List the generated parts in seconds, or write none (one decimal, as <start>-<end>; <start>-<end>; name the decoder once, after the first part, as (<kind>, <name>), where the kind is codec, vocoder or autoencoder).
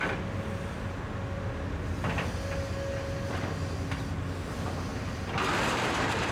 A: 4.9-6.3 (vocoder, BigVGAN v2)